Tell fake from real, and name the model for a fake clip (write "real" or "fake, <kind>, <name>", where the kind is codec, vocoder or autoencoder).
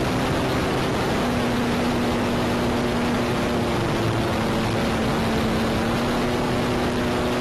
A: real